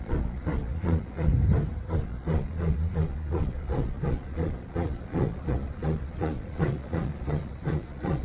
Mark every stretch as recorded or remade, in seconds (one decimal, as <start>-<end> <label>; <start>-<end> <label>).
0.0-1.3 remade; 1.3-1.9 recorded; 1.9-8.2 remade